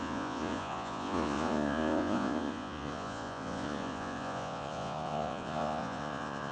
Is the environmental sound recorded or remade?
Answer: remade